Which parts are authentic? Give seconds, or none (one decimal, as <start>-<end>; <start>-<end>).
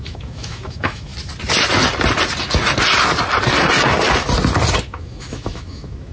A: 1.1-4.8